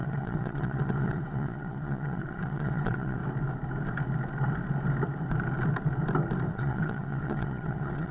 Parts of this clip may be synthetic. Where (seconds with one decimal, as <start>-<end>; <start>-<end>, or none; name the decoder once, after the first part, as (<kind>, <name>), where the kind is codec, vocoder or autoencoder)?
0.0-3.2 (vocoder, WaveNeXt); 6.5-8.1